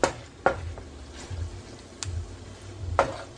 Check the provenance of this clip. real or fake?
real